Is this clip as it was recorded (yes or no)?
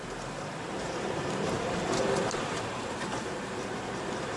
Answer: no